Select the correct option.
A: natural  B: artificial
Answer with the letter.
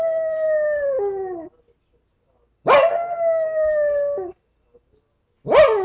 A